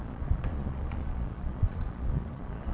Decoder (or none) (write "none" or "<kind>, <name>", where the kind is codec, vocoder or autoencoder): vocoder, Vocos